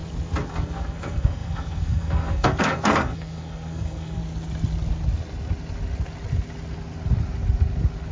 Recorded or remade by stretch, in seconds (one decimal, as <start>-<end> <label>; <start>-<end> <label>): 0.0-0.5 recorded; 0.5-4.2 remade; 4.2-8.1 recorded